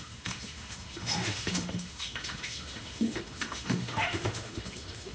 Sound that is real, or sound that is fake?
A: fake